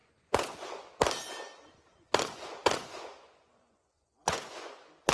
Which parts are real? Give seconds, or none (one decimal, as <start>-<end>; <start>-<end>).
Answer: 0.9-1.9